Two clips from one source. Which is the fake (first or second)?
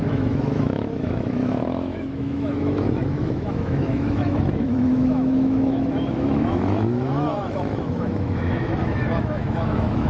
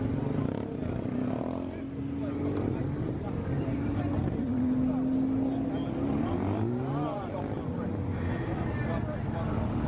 first